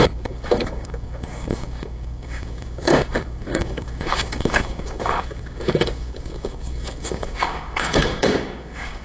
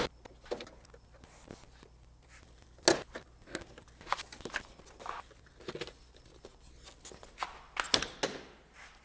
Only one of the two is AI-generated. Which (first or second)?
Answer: first